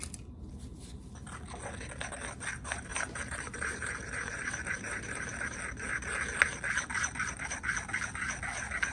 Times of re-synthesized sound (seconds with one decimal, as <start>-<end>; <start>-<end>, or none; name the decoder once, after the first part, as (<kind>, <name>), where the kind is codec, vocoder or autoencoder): 2.9-5.6 (vocoder, BigVGAN v2)